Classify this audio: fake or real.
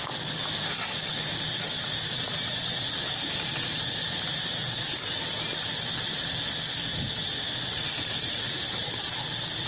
real